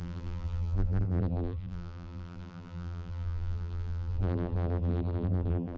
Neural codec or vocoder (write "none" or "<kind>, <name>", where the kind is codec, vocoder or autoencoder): vocoder, BigVGAN v2